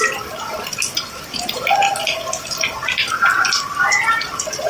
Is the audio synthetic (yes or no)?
no